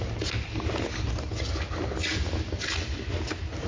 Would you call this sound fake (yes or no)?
no